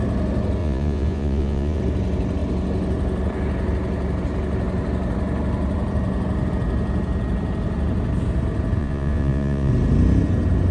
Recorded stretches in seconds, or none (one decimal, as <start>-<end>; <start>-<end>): 0.0-0.6; 1.8-8.8; 9.7-10.7